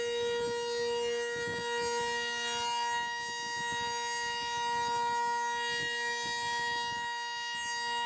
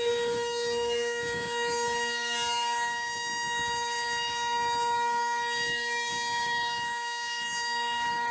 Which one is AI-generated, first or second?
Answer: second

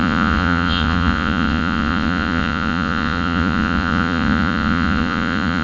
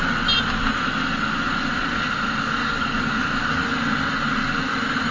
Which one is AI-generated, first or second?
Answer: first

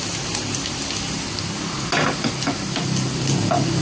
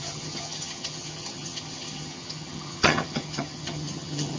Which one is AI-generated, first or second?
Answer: second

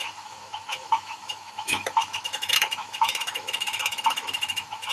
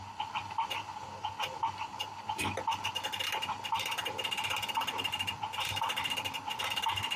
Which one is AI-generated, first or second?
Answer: first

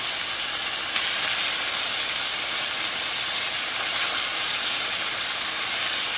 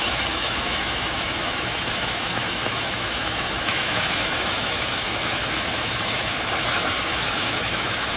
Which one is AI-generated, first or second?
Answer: second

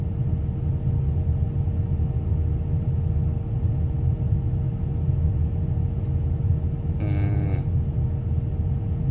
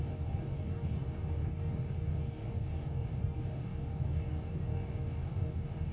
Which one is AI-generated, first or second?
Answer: second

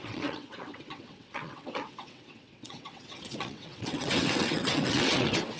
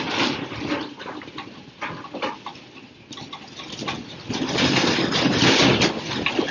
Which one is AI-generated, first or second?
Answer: first